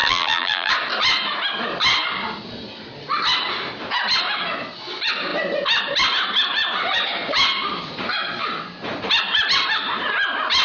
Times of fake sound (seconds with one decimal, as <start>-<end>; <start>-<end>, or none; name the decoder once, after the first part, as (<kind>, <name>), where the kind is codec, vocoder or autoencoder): 0.0-0.7 (vocoder, BigVGAN v2)